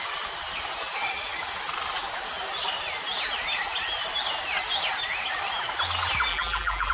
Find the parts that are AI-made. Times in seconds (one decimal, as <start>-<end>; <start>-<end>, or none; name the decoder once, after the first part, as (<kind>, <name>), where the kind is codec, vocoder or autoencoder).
6.3-6.9 (vocoder, BigVGAN v2)

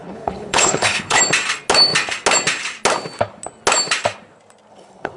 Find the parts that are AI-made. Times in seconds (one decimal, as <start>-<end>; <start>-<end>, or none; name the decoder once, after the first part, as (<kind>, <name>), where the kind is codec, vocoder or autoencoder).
0.0-1.2 (codec, HILCodec); 4.7-5.2

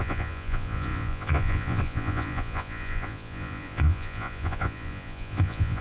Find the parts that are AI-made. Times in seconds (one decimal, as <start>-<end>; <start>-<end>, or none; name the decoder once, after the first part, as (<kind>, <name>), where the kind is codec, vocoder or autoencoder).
0.0-5.8 (vocoder, Vocos)

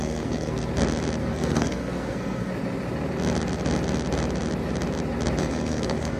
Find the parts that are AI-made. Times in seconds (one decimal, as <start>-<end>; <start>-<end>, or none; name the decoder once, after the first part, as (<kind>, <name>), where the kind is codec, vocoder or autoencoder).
0.0-0.7 (codec, SNAC); 1.2-2.5; 5.4-6.2